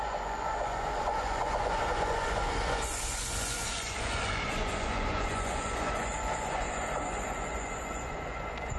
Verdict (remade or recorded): remade